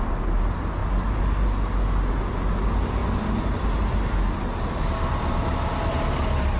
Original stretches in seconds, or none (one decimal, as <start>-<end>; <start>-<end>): 0.0-6.6